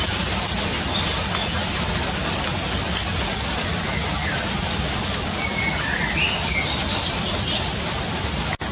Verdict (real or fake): real